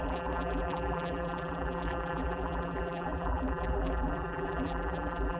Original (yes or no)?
no